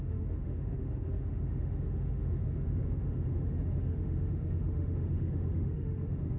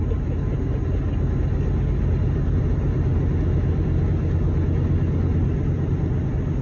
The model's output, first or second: first